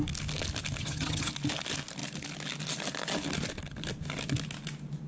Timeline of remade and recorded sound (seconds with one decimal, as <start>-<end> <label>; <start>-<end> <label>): 0.0-0.8 recorded; 0.8-1.3 remade; 1.3-5.1 recorded